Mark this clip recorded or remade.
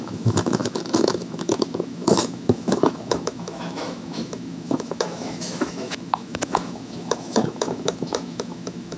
remade